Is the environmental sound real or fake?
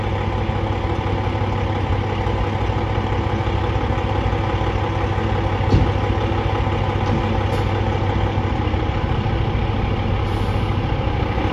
real